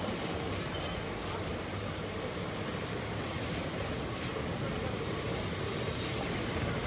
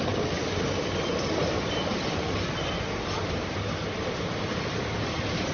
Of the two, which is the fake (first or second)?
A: second